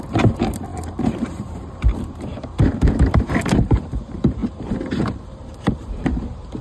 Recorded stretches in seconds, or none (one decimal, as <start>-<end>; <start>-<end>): none